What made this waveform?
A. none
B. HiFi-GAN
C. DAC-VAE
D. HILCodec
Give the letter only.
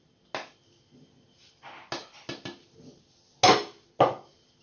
A